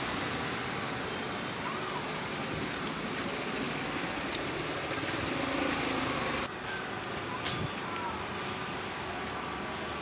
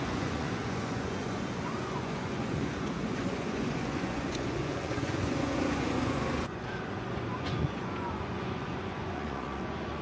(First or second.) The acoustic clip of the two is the first